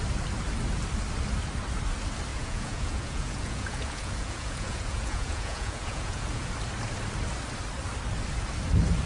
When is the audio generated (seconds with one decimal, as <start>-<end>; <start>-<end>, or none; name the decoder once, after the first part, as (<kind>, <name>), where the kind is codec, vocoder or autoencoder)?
2.3-6.5 (vocoder, Vocos)